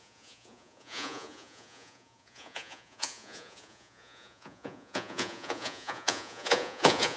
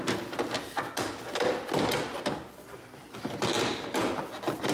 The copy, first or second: first